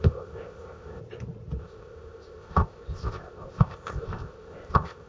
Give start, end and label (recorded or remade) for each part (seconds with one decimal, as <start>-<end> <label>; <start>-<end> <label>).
0.0-1.0 remade; 1.0-1.6 recorded; 1.6-5.1 remade